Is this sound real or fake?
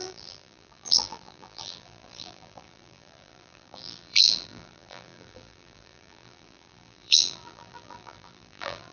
fake